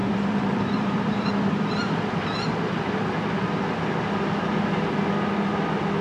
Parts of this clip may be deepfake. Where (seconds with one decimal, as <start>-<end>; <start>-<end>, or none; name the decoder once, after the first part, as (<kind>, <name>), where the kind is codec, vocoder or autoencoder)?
0.0-1.3 (vocoder, BigVGAN v2)